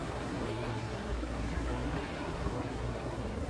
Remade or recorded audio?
remade